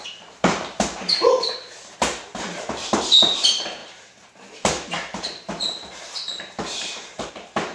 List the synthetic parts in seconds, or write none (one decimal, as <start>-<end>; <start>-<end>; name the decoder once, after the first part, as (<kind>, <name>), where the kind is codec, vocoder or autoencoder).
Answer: 0.0-7.7 (vocoder, BigVGAN v2)